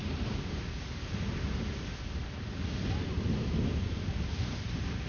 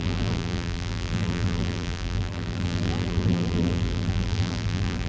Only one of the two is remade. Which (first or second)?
second